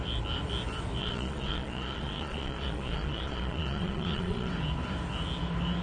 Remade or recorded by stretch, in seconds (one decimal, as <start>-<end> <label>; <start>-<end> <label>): 0.0-1.0 recorded; 1.0-4.5 remade; 4.5-5.8 recorded